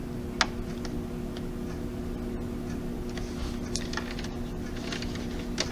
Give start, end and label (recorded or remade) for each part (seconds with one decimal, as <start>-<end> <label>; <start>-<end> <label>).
0.0-5.7 recorded